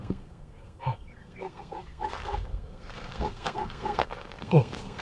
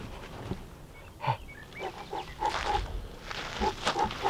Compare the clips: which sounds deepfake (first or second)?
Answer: first